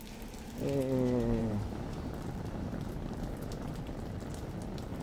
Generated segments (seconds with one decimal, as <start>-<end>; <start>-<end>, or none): 1.4-3.3